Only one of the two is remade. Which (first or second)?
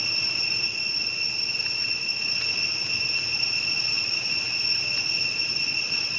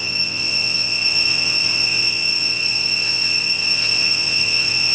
second